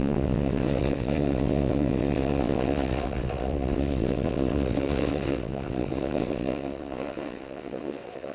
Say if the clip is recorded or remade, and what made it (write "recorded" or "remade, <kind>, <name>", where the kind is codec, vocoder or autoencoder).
remade, vocoder, WaveNeXt